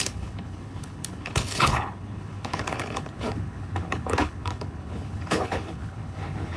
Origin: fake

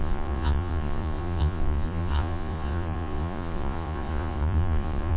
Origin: fake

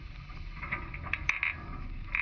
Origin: real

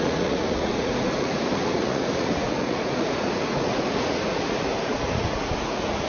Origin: fake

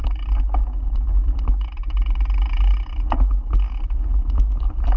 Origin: real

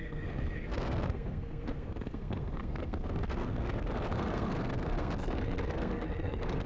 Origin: fake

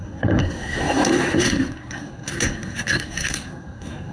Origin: fake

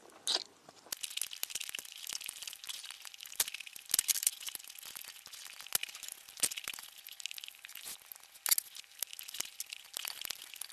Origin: real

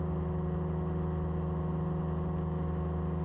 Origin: real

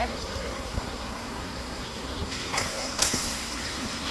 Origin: fake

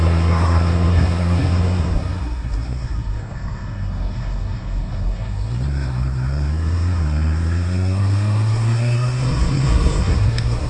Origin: fake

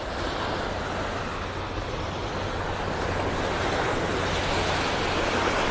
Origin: real